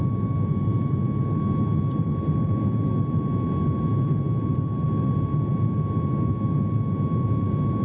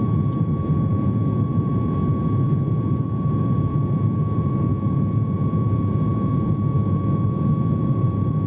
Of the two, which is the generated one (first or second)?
second